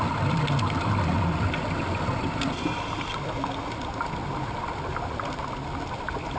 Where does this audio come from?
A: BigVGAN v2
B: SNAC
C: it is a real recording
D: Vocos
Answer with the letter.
C